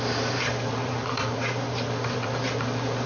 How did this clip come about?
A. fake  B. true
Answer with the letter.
A